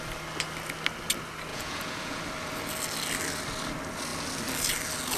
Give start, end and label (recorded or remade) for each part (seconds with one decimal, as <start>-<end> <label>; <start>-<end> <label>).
0.0-1.5 recorded; 1.5-2.2 remade; 2.2-5.2 recorded